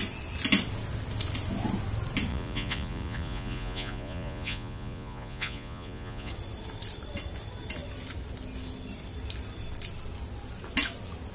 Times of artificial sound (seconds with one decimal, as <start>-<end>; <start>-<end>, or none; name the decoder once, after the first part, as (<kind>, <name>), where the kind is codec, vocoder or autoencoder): 2.3-6.3 (vocoder, Vocos)